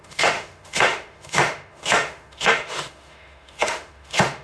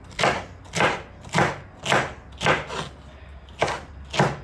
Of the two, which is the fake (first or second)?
first